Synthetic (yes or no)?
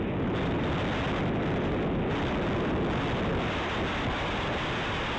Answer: no